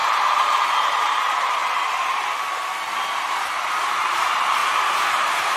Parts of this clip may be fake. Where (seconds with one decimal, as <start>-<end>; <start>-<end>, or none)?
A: 0.0-1.6; 3.3-5.6